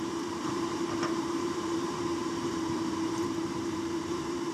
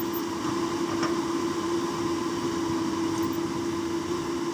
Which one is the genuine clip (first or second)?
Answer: second